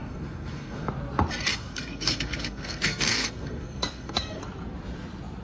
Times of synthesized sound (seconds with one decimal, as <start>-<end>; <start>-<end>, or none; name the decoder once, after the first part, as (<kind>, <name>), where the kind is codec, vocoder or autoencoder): 0.0-0.9 (codec, SNAC); 1.6-4.4